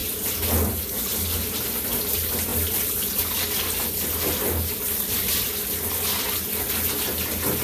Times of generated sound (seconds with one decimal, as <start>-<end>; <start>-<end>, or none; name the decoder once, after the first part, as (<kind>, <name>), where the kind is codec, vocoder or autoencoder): none